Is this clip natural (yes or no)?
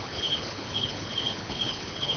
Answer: no